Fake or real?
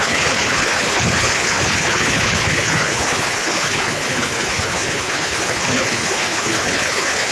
fake